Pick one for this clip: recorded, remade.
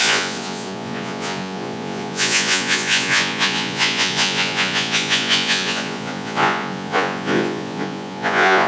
remade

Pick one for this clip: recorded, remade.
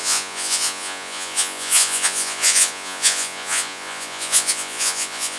remade